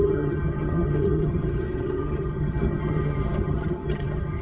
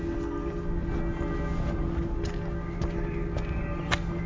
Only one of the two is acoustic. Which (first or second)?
second